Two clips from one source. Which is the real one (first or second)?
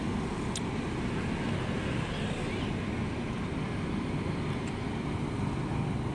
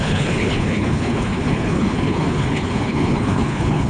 first